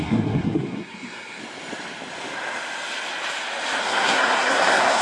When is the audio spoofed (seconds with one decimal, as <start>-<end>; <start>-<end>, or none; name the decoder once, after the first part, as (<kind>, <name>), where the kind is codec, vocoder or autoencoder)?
0.0-1.4 (codec, SNAC); 3.8-5.0